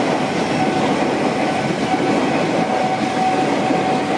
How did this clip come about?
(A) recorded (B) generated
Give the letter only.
A